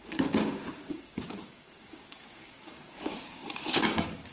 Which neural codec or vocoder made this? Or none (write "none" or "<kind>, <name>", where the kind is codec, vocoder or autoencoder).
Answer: codec, DAC